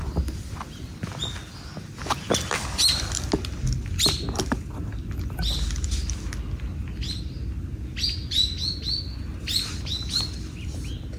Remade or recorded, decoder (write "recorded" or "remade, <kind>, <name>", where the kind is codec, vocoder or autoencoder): recorded